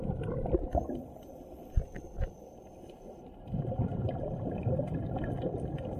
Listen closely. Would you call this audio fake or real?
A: fake